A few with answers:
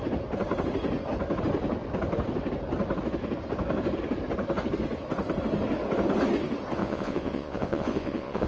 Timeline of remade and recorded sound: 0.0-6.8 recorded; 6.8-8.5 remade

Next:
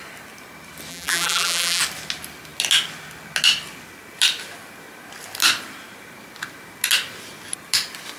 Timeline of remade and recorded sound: 0.0-0.9 recorded; 0.9-1.8 remade; 1.8-8.2 recorded

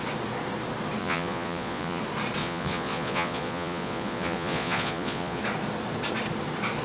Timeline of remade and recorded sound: 0.0-1.0 recorded; 1.0-2.0 remade; 2.0-2.4 recorded; 2.4-5.4 remade; 5.4-6.8 recorded

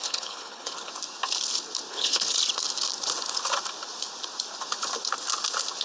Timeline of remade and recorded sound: 0.0-0.9 remade; 0.9-1.9 recorded; 1.9-2.4 remade; 2.4-5.8 recorded

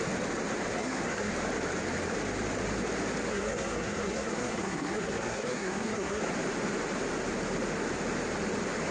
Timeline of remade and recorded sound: 0.0-0.7 recorded; 0.7-1.3 remade; 1.3-3.3 recorded; 3.3-6.2 remade; 6.2-8.9 recorded

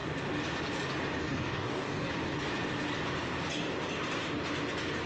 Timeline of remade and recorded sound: 0.0-1.2 recorded; 1.2-2.1 remade; 2.1-5.1 recorded

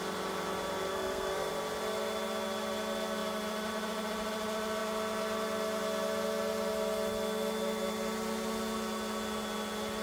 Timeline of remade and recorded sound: 0.0-0.9 recorded; 0.9-1.5 remade; 1.5-10.0 recorded